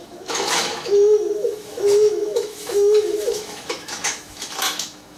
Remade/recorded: remade